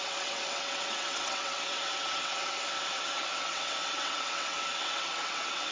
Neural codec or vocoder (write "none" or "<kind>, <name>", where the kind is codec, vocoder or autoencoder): vocoder, WaveNeXt